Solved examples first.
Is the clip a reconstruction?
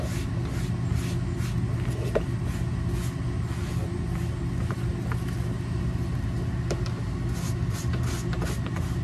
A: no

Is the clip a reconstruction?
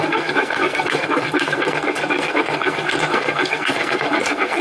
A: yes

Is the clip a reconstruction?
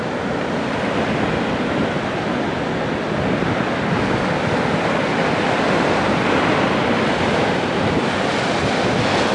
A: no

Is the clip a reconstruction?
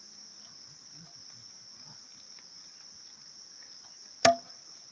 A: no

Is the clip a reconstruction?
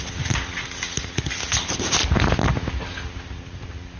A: no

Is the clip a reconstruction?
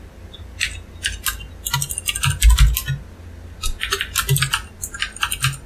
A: no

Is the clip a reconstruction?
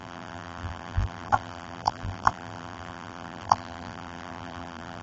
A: yes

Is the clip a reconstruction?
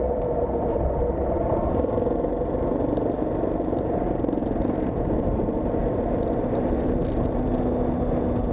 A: no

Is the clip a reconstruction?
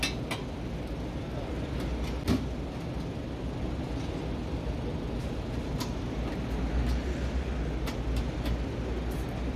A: no